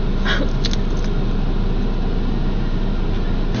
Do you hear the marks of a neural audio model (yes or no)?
no